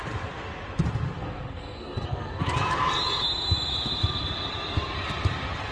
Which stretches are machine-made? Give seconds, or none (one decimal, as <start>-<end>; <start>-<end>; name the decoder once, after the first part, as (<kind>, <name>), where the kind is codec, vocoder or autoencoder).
1.2-2.4 (codec, SNAC)